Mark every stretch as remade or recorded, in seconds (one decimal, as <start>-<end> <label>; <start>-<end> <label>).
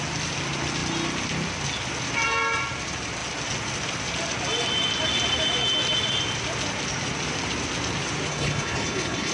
0.0-8.3 recorded; 8.3-9.3 remade